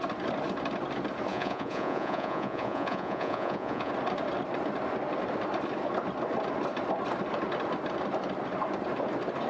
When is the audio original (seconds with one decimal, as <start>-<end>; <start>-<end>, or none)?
0.0-1.3; 3.9-9.5